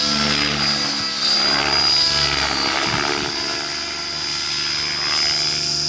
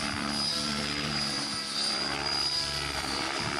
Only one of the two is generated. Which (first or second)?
second